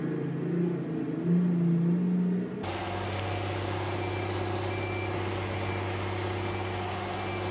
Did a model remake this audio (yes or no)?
no